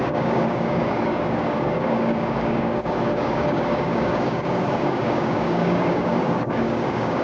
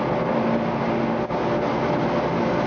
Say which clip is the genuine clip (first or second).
second